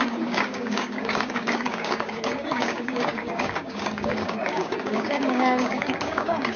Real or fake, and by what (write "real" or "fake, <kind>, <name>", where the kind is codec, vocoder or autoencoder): fake, codec, DAC